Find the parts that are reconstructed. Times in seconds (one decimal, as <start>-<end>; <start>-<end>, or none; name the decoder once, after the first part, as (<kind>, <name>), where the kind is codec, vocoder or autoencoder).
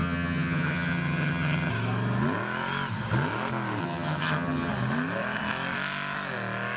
0.0-1.7 (vocoder, HiFi-GAN); 3.8-4.7